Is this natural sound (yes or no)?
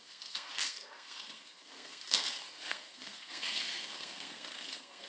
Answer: no